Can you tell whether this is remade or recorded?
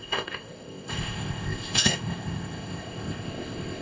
remade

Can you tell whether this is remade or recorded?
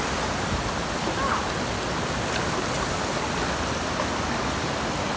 recorded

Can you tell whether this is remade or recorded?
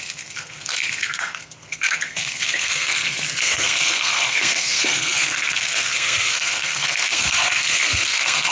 remade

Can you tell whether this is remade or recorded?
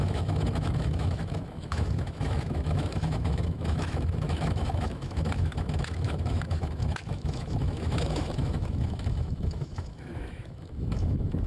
remade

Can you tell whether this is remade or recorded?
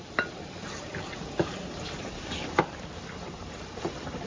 remade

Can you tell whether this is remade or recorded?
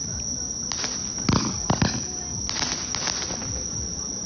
recorded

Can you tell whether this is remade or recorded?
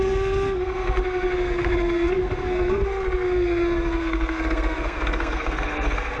remade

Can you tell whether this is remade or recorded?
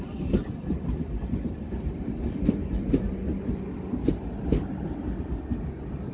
recorded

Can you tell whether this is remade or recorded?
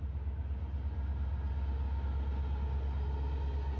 recorded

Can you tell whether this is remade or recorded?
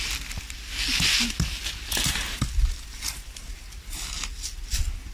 recorded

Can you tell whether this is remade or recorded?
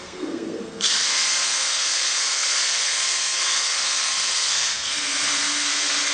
remade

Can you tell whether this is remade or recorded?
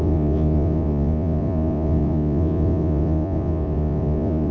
remade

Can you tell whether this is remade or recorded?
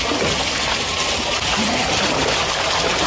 recorded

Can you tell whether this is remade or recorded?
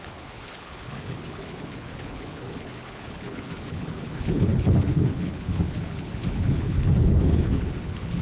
remade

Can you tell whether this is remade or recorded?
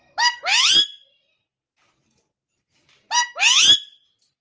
recorded